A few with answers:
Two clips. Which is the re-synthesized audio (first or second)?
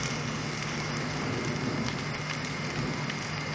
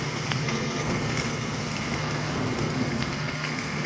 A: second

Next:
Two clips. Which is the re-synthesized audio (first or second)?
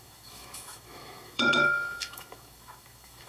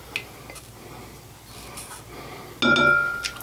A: first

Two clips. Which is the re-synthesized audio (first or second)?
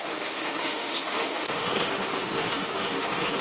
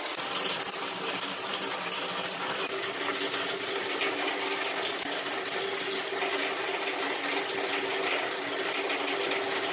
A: first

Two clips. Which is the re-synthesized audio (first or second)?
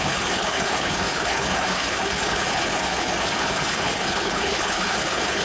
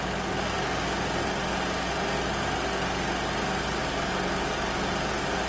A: first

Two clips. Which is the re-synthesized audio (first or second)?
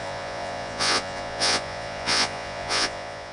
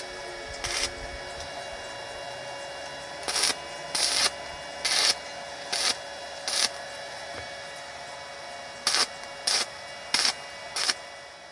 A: first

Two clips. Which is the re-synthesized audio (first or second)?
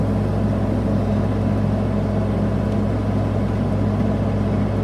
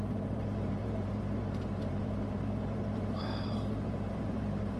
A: second